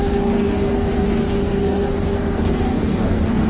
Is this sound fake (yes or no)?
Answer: yes